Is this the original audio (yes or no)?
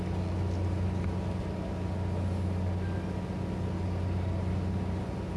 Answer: yes